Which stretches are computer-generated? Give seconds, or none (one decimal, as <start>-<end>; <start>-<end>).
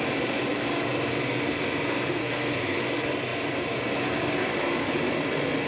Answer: 2.2-2.8